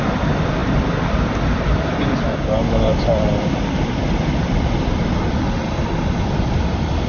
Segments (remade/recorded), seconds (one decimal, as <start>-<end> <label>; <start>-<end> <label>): 0.0-7.1 remade

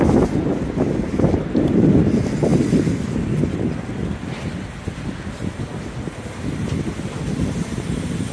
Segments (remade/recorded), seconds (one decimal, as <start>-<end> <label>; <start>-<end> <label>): 0.0-8.3 recorded

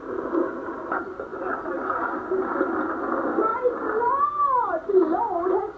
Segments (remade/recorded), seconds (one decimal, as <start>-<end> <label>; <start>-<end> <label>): 0.0-5.8 recorded